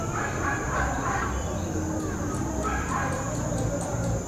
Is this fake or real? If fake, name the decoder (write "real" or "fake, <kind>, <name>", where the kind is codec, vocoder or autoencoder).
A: real